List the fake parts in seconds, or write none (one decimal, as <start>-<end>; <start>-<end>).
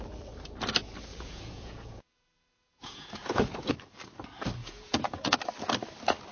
1.1-3.7; 4.6-5.4